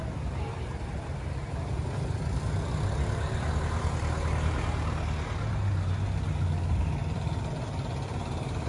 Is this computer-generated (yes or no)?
no